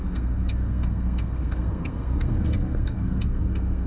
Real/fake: fake